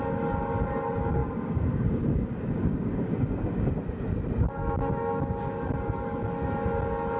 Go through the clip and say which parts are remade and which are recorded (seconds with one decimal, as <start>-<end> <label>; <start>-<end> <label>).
0.0-1.2 recorded; 1.2-3.7 remade; 3.7-4.6 recorded; 4.6-5.7 remade; 5.7-7.2 recorded